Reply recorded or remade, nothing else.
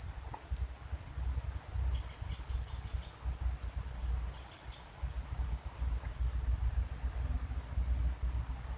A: recorded